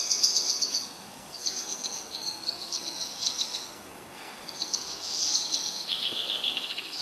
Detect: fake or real fake